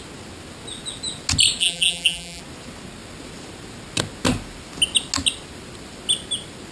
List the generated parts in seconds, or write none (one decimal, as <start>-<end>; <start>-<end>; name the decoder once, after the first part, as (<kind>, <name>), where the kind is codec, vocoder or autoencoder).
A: 1.6-2.4 (vocoder, BigVGAN v2)